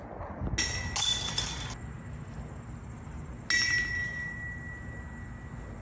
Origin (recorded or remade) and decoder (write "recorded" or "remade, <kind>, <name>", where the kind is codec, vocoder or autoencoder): recorded